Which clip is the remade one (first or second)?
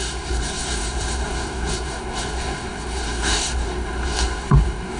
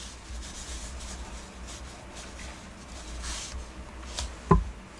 first